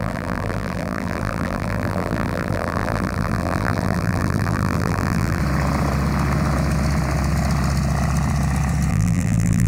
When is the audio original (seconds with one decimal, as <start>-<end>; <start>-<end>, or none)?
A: 5.4-8.9